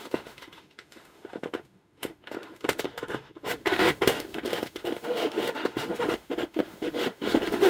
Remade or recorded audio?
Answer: remade